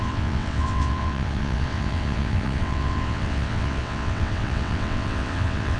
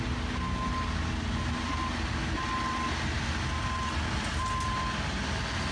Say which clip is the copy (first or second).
first